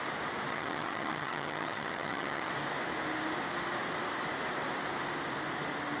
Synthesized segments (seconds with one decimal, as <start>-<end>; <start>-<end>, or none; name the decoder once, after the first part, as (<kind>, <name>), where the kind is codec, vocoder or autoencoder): 0.5-2.5 (vocoder, HiFi-GAN)